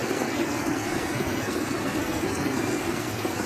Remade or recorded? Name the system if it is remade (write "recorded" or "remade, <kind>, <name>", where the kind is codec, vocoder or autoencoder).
remade, codec, SNAC